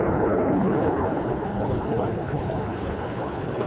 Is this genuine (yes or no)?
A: no